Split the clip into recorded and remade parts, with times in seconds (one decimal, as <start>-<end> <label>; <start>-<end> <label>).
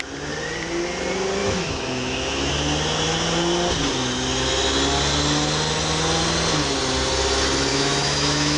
0.0-1.4 recorded; 1.4-2.5 remade; 2.5-7.7 recorded; 7.7-8.6 remade